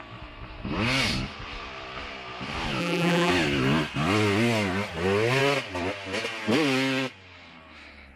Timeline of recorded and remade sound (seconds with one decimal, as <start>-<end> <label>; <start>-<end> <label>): 0.0-2.8 recorded; 2.8-3.3 remade; 3.3-8.2 recorded